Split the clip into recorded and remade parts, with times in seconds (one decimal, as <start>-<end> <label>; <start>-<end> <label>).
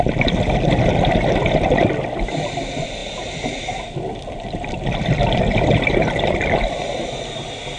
0.0-7.8 recorded